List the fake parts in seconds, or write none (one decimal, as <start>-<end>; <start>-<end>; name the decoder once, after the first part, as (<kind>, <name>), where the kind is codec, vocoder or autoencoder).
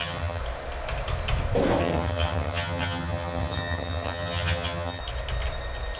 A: 0.0-0.4 (vocoder, HiFi-GAN); 1.8-5.0